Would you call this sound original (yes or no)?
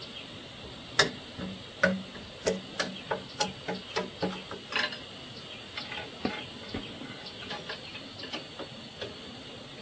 yes